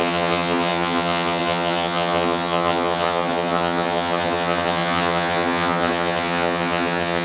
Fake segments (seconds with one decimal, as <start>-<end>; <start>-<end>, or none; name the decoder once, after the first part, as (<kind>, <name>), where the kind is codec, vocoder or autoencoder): 0.0-7.2 (vocoder, HiFi-GAN)